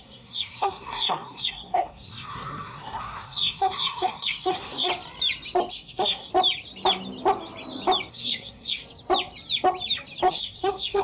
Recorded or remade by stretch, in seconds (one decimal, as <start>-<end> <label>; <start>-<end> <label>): 0.0-4.9 remade; 4.9-5.7 recorded; 5.7-6.3 remade; 6.3-8.1 recorded; 8.1-8.8 remade; 8.8-10.3 recorded; 10.3-11.0 remade